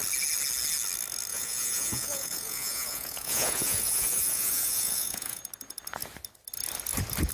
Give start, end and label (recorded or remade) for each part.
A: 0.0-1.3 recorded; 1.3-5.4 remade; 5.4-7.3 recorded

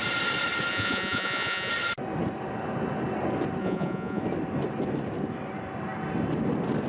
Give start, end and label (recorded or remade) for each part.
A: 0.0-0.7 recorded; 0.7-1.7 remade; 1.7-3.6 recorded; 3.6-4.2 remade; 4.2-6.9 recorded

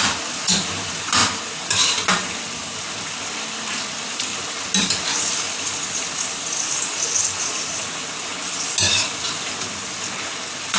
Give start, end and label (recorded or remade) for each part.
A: 0.0-7.4 recorded; 7.4-7.9 remade; 7.9-10.8 recorded

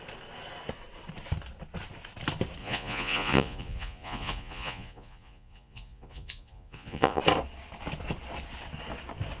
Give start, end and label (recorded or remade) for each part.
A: 0.0-2.6 recorded; 2.6-7.2 remade; 7.2-9.4 recorded

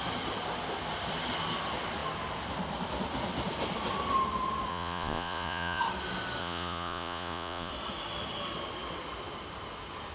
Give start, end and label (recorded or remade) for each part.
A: 0.0-4.7 recorded; 4.7-5.8 remade; 5.8-6.4 recorded; 6.4-7.7 remade; 7.7-10.1 recorded